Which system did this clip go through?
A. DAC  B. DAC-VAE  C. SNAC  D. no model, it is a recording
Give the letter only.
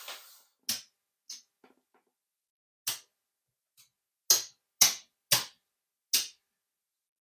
D